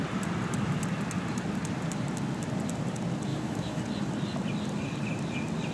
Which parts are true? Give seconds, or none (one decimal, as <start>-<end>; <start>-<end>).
0.0-3.3; 3.8-5.7